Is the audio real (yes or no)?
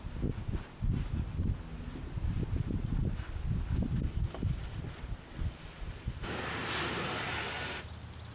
yes